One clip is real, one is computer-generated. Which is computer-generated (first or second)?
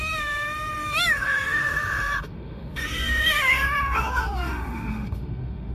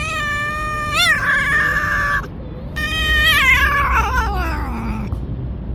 first